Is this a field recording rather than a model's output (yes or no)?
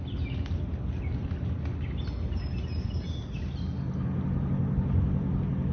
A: yes